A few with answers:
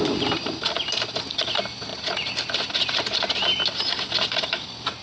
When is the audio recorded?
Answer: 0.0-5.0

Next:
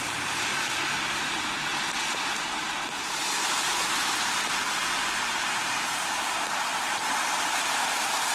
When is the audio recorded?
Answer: 0.5-1.2

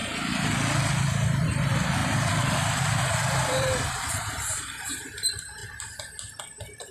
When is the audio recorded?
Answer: 0.0-2.0; 4.1-6.9

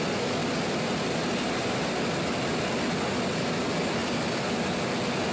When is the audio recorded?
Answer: 0.0-5.3